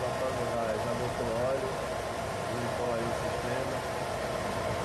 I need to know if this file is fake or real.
real